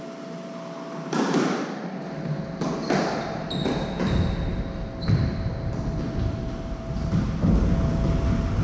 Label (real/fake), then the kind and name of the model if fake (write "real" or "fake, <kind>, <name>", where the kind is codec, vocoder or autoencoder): real